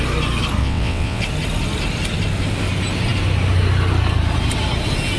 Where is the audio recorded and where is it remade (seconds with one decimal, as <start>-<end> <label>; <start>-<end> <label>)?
0.0-0.6 recorded; 0.6-1.2 remade; 1.2-5.2 recorded